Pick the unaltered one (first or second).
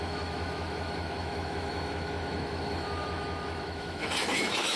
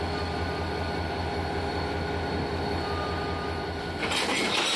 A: second